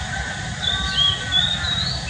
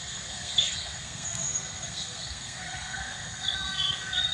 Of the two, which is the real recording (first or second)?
first